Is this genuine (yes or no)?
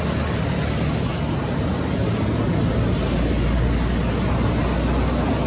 yes